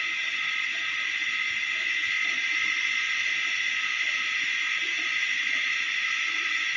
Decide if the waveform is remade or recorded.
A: recorded